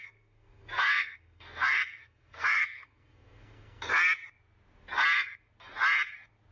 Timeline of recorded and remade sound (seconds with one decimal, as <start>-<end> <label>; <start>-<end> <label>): 0.0-3.9 remade; 3.9-6.5 recorded